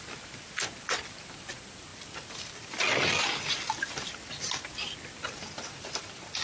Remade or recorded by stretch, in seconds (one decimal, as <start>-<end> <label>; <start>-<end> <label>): 0.0-6.4 recorded